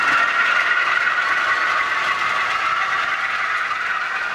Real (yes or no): yes